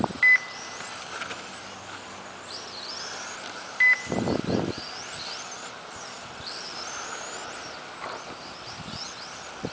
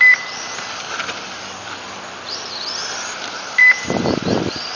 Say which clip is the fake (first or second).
second